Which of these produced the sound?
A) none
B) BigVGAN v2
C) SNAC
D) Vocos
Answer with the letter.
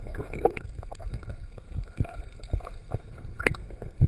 C